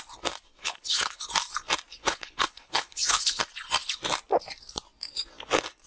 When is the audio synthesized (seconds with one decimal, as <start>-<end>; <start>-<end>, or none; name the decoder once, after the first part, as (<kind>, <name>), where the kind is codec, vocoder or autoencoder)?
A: 0.6-1.2 (codec, HILCodec); 2.0-3.4